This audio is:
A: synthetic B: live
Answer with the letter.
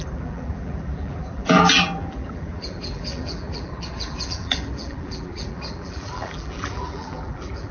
A